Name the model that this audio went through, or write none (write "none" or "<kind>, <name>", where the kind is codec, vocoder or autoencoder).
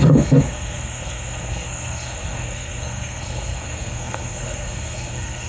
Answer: codec, SNAC